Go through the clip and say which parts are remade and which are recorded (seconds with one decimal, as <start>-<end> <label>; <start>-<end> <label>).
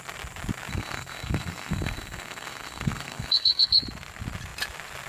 0.0-0.7 recorded; 0.7-3.8 remade; 3.8-5.1 recorded